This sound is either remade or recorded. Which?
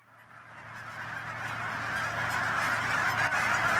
recorded